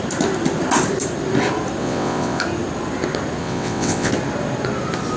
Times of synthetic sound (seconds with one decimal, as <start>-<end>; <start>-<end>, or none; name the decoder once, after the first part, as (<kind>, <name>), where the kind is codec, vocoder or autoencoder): 1.8-2.4 (vocoder, WaveNeXt); 3.4-4.1